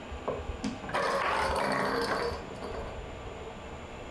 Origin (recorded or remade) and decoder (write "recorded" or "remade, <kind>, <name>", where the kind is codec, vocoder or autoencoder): recorded